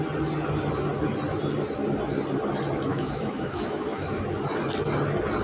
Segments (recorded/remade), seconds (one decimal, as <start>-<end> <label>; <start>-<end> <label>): 0.0-2.9 recorded; 2.9-4.2 remade; 4.2-5.4 recorded